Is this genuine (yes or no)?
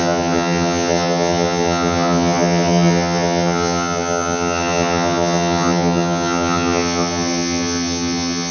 no